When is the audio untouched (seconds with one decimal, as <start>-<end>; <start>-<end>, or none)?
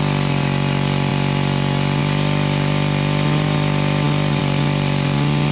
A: 0.0-5.5